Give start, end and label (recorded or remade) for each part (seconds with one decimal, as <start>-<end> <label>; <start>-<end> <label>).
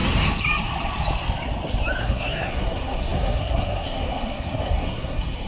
0.0-2.0 recorded; 2.0-5.5 remade